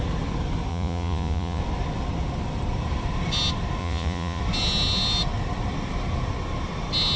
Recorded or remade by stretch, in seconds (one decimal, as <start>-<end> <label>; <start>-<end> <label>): 0.0-0.7 recorded; 0.7-1.6 remade; 1.6-3.8 recorded; 3.8-4.4 remade; 4.4-7.2 recorded